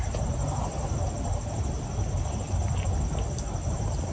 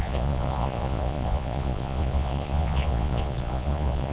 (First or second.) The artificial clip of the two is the second